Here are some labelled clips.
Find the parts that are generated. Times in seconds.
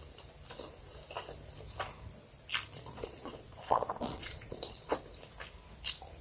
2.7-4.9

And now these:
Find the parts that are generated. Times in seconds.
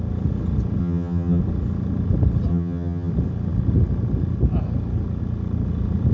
0.8-1.4; 2.5-3.1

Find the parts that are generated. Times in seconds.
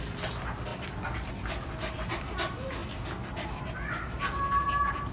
none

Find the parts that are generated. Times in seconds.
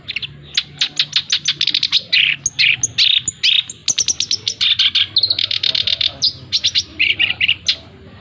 6.9-7.6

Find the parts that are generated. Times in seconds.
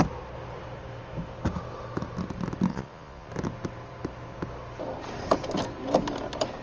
2.7-3.3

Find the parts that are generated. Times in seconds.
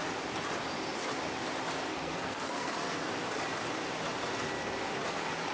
1.9-3.1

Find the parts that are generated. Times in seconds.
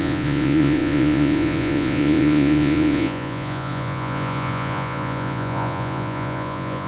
0.0-6.9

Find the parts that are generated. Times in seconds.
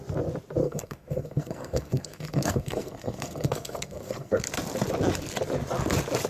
0.6-4.4